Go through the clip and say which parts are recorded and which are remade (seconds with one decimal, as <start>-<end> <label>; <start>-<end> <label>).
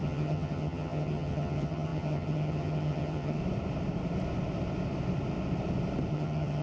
0.0-3.4 remade; 3.4-6.1 recorded; 6.1-6.6 remade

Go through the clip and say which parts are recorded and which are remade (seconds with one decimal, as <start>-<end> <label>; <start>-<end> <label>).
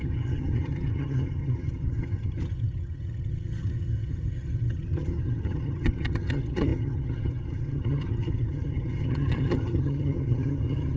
0.0-11.0 remade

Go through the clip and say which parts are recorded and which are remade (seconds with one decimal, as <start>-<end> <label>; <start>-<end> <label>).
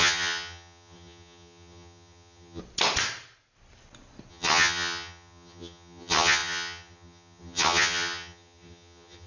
0.0-2.6 remade; 2.6-4.3 recorded; 4.3-9.3 remade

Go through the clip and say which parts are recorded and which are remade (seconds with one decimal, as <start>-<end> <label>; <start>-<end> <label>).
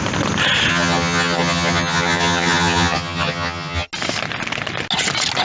0.0-0.7 recorded; 0.7-3.9 remade; 3.9-5.4 recorded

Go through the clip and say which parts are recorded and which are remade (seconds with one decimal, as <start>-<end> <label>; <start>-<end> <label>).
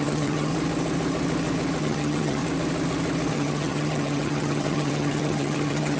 0.0-0.5 remade; 0.5-1.8 recorded; 1.8-2.4 remade; 2.4-3.3 recorded; 3.3-6.0 remade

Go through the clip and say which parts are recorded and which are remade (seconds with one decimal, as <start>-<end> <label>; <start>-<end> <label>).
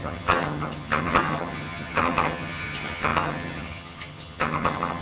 0.0-5.0 remade